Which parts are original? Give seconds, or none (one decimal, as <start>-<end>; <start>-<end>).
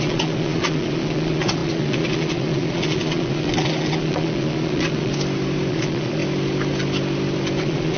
5.1-5.7; 6.2-7.6